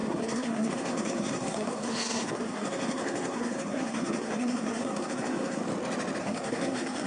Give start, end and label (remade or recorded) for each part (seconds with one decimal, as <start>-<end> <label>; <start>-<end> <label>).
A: 0.0-5.6 remade; 5.6-6.2 recorded; 6.2-7.1 remade